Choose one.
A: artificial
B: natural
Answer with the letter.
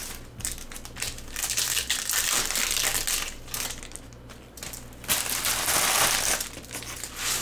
B